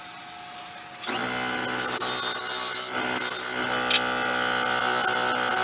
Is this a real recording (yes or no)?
yes